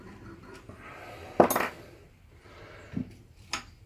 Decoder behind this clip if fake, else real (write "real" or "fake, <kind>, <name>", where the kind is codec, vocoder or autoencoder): real